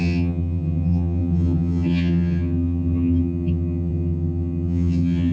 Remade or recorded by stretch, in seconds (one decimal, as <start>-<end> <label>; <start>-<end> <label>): 0.0-5.3 remade

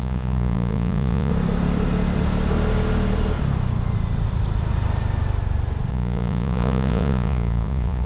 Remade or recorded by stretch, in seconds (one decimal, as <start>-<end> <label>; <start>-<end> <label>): 0.0-1.3 remade; 1.3-5.9 recorded; 5.9-8.1 remade